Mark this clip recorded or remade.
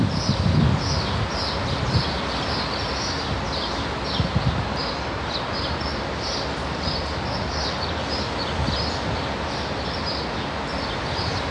recorded